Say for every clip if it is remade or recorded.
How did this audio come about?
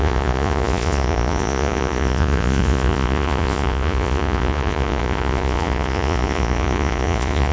remade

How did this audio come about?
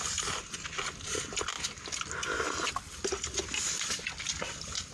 recorded